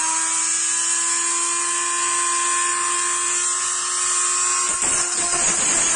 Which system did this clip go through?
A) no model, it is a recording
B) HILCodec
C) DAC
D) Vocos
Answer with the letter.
A